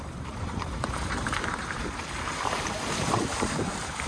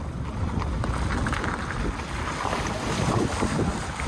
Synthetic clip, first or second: first